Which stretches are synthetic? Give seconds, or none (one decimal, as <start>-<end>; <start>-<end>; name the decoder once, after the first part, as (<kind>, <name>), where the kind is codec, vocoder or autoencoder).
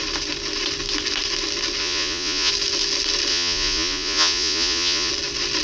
1.8-2.5 (vocoder, Vocos); 3.3-5.1